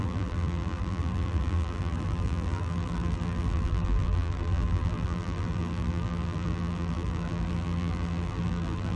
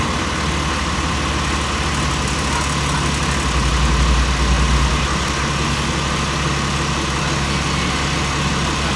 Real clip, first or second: second